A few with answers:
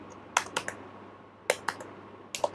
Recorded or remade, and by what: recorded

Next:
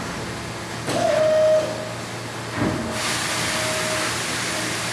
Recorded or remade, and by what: recorded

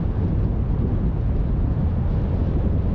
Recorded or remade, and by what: recorded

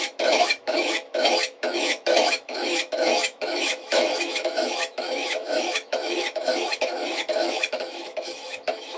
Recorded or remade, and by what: remade, autoencoder, DAC-VAE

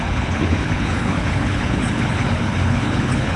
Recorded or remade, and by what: remade, codec, HILCodec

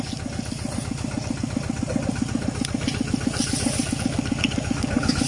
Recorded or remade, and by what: recorded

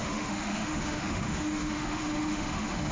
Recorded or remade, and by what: remade, autoencoder, DAC-VAE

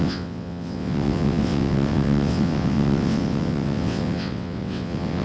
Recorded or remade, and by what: remade, vocoder, WaveNeXt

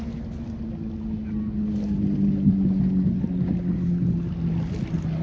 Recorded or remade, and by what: recorded